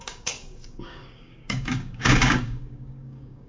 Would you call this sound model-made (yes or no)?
yes